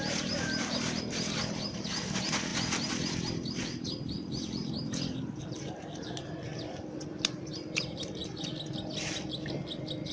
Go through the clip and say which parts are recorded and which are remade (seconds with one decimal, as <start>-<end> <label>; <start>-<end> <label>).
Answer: 0.0-8.2 remade; 8.2-10.1 recorded